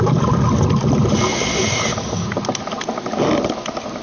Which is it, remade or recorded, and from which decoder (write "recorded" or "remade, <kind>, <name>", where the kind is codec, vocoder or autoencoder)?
recorded